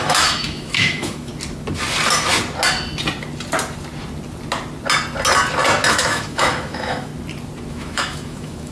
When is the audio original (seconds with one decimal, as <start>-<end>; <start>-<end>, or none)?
1.3-5.9; 7.1-7.7